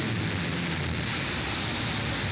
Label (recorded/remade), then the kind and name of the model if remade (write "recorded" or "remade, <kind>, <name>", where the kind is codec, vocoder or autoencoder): recorded